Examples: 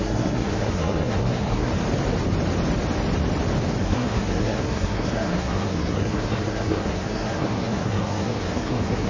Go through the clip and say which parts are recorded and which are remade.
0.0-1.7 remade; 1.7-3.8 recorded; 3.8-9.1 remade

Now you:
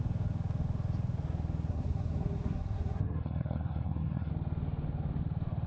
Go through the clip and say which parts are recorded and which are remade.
0.0-1.7 recorded; 1.7-4.3 remade; 4.3-5.7 recorded

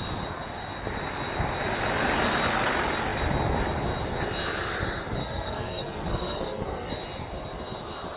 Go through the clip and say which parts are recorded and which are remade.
0.0-5.2 recorded; 5.2-6.9 remade; 6.9-8.2 recorded